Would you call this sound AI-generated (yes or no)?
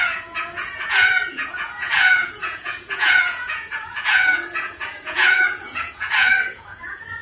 yes